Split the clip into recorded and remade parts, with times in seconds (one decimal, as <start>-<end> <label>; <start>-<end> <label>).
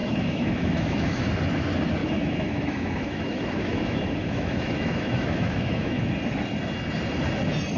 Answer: 0.0-1.3 remade; 1.3-2.0 recorded; 2.0-6.0 remade; 6.0-7.8 recorded